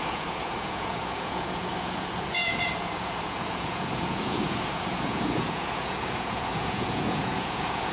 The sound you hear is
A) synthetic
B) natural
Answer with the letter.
A